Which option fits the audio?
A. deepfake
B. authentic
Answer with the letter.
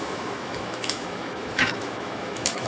A